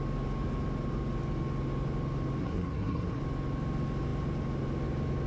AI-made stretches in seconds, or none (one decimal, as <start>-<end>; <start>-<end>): 2.4-3.2